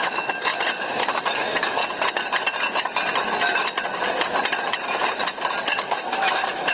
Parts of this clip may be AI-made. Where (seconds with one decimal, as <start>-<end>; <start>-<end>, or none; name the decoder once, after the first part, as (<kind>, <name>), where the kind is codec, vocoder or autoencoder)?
0.0-0.5 (autoencoder, DAC-VAE); 1.1-1.8; 5.8-6.7